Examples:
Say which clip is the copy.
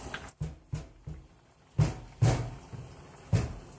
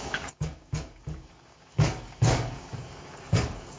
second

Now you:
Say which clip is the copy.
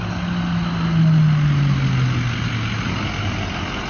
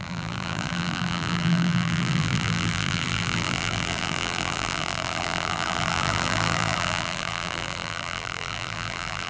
second